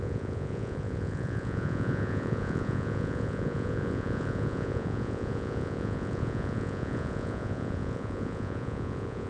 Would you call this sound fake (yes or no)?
yes